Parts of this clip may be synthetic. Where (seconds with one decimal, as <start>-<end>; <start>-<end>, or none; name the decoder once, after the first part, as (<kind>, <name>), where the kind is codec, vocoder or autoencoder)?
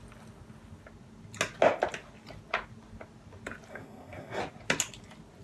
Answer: 3.7-4.4 (codec, SNAC)